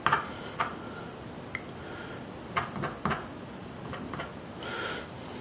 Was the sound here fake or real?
real